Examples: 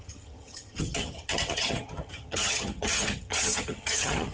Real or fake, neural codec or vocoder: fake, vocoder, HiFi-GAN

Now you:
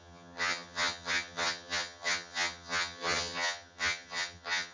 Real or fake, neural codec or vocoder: fake, vocoder, HiFi-GAN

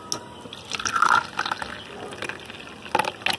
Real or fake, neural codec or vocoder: real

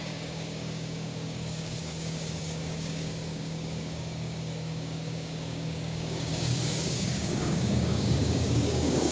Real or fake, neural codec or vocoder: fake, codec, DAC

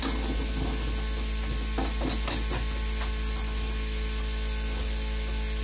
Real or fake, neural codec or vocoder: real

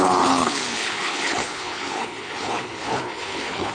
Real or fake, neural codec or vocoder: fake, codec, HILCodec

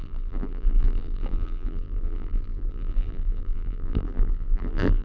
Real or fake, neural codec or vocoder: fake, vocoder, BigVGAN v2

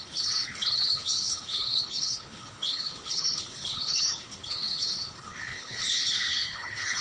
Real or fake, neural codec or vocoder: fake, codec, HILCodec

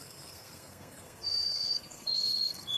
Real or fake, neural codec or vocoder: fake, codec, SNAC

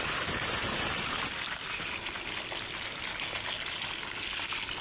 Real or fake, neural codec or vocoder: real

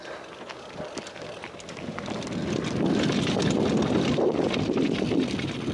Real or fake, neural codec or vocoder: real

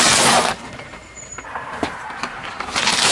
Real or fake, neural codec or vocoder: fake, vocoder, BigVGAN v2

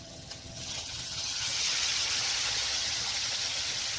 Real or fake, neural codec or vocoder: fake, vocoder, HiFi-GAN